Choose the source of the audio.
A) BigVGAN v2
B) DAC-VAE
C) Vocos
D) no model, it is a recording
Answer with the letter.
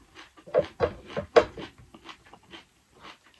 D